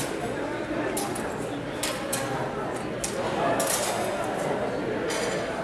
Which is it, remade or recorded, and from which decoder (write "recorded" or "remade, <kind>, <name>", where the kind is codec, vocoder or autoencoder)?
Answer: recorded